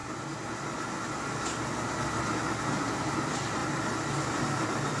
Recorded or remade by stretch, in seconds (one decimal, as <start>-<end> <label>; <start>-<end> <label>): 0.0-2.6 recorded; 2.6-5.0 remade